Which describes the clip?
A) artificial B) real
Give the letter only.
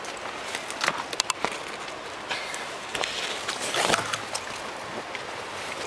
B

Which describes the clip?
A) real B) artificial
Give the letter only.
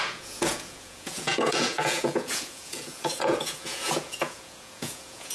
B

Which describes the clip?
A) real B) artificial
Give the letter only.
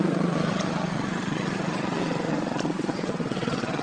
B